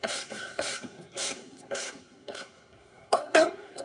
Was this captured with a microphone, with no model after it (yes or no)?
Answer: no